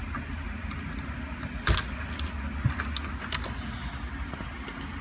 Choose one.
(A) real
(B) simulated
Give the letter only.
A